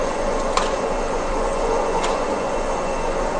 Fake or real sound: fake